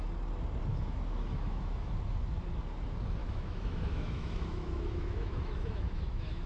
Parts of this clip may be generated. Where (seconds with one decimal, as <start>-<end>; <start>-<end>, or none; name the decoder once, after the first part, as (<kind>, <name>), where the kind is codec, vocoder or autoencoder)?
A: 0.7-1.9 (autoencoder, DAC-VAE); 3.2-6.5